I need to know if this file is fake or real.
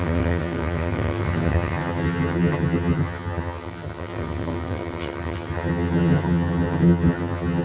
fake